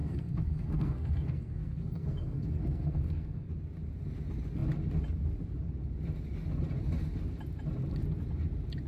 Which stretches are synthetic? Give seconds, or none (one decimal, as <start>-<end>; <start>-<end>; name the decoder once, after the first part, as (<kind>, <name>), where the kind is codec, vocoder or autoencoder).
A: 0.0-3.5 (codec, SNAC)